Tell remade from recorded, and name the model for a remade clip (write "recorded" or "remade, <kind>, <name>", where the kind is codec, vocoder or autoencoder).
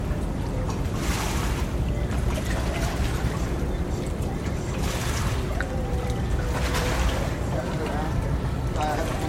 remade, vocoder, BigVGAN v2